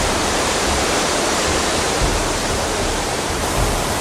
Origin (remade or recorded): remade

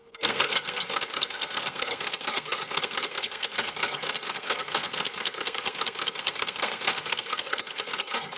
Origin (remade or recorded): remade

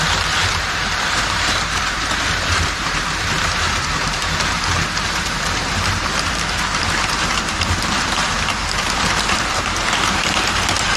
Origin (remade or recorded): remade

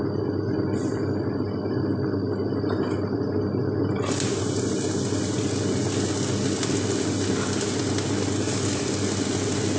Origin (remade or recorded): recorded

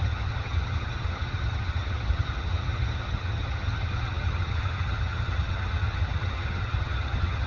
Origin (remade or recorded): remade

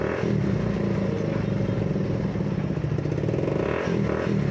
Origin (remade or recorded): recorded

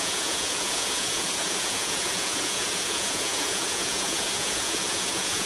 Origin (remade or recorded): remade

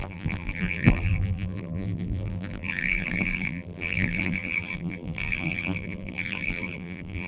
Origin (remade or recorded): remade